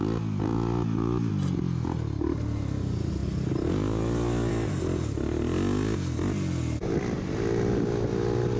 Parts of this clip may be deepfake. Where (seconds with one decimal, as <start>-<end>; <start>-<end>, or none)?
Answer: none

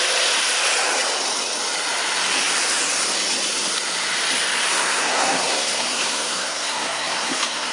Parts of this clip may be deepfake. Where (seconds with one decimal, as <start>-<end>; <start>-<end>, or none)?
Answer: 4.7-7.7

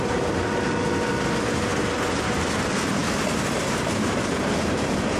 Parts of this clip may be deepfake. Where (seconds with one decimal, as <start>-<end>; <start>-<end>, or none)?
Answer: none

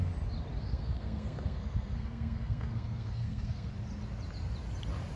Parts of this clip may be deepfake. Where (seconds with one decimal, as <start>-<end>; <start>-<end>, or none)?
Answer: 0.6-3.7

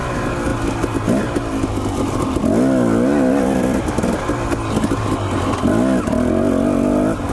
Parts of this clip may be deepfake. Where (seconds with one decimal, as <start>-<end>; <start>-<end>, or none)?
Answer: none

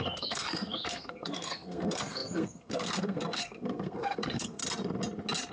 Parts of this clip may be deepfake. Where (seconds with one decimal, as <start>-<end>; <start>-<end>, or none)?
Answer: 0.0-4.6

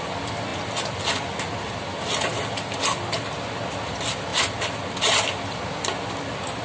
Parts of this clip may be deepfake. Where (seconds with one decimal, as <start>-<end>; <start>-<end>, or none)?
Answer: none